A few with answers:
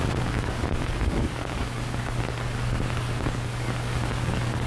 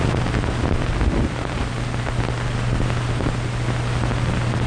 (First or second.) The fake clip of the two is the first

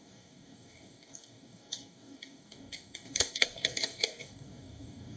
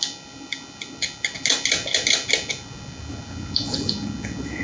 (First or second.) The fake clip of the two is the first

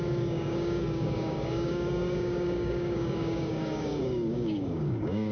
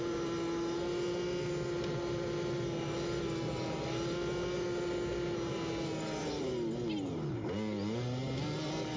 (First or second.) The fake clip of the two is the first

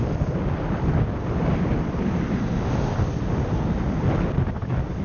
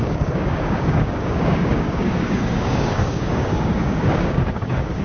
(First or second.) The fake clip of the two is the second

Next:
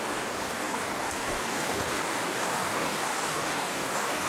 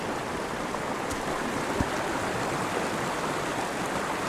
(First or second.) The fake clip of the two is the first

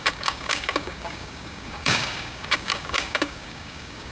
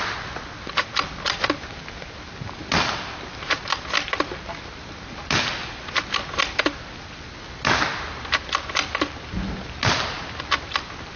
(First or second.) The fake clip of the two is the first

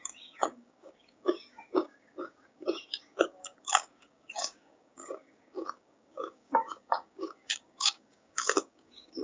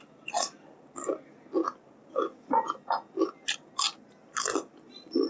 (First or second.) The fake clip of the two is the first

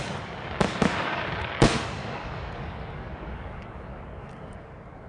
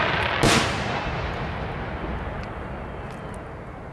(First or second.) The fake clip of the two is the first